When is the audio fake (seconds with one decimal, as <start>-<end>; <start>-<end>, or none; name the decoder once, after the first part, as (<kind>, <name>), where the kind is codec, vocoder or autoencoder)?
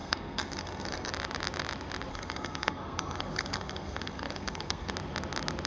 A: 0.0-1.1 (codec, SNAC); 2.1-4.9